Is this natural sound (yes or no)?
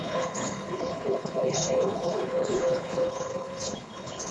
no